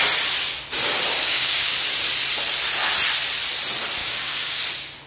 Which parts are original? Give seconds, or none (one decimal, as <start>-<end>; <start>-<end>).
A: 0.0-1.2; 1.7-4.0; 4.6-5.1